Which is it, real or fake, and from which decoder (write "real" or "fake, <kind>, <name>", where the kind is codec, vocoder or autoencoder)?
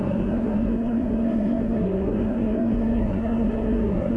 fake, codec, SNAC